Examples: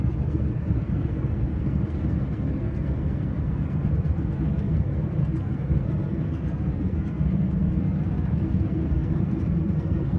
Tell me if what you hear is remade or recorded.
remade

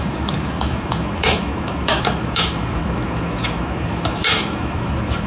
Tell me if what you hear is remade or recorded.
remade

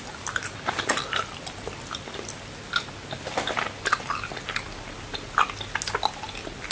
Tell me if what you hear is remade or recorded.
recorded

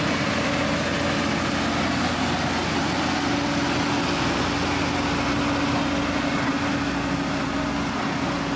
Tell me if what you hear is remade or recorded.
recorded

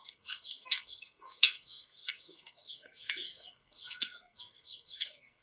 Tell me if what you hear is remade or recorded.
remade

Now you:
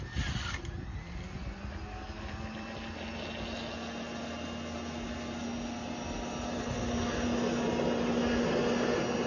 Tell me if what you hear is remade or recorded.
recorded